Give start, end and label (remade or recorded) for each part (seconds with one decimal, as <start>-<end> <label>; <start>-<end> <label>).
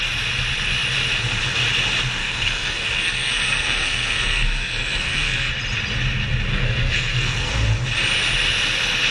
0.0-2.2 recorded; 2.2-5.5 remade; 5.5-6.5 recorded; 6.5-7.5 remade; 7.5-9.1 recorded